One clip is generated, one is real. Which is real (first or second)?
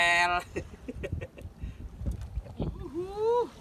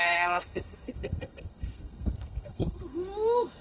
first